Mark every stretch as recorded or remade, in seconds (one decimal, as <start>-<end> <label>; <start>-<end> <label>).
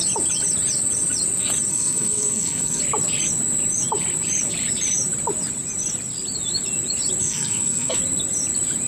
0.0-1.7 recorded; 1.7-2.8 remade; 2.8-7.2 recorded; 7.2-8.0 remade; 8.0-8.9 recorded